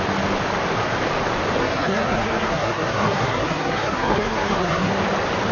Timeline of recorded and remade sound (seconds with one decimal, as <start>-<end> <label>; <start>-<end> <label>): 0.0-1.6 recorded; 1.6-4.9 remade; 4.9-5.5 recorded